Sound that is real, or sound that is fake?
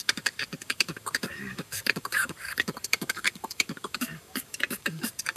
fake